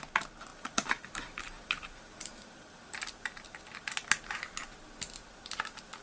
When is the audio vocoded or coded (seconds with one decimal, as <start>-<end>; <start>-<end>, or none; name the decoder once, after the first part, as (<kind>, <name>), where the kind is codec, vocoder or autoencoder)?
0.5-3.6 (vocoder, BigVGAN v2)